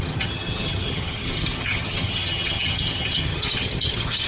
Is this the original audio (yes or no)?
no